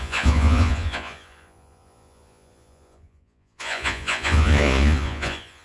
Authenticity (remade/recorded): remade